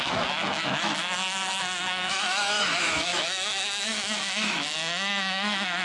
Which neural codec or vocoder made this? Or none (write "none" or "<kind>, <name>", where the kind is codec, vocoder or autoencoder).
autoencoder, DAC-VAE